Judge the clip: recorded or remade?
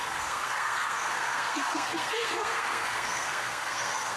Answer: remade